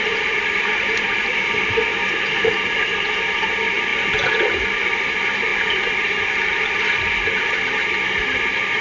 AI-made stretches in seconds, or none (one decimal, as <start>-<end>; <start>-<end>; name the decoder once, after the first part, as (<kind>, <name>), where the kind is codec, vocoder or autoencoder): 0.0-3.9 (vocoder, BigVGAN v2); 5.0-6.5